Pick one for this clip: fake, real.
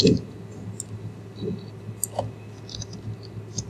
real